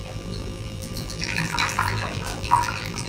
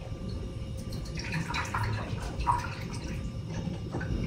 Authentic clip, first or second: second